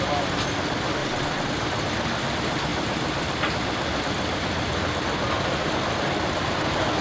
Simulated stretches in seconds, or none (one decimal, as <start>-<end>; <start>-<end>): 1.0-1.5